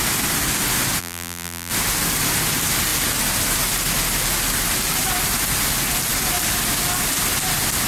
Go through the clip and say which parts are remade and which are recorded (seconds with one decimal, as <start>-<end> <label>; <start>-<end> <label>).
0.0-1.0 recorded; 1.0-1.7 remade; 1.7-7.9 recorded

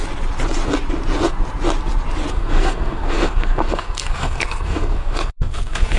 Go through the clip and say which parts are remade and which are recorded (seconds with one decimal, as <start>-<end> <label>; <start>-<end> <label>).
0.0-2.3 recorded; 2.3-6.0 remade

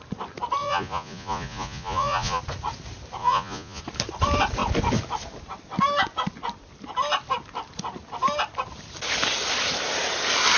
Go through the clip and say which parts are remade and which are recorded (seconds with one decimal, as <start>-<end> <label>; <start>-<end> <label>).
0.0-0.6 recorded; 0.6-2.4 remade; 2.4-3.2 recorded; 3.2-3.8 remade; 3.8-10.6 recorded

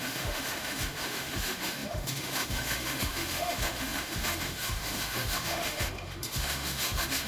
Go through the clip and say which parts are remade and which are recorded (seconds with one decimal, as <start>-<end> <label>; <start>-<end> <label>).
0.0-7.3 remade

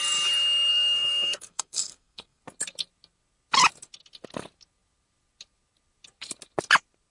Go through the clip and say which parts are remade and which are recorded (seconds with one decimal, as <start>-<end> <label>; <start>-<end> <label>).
0.0-0.7 recorded; 0.7-2.4 remade; 2.4-7.1 recorded

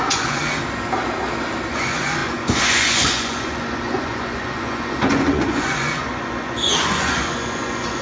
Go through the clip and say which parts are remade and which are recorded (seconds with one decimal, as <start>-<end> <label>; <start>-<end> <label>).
0.0-0.4 remade; 0.4-1.7 recorded; 1.7-8.0 remade